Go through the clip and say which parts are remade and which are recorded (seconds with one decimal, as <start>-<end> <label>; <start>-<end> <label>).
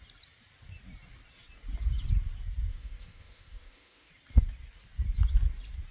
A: 0.0-2.7 recorded; 2.7-4.1 remade; 4.1-5.9 recorded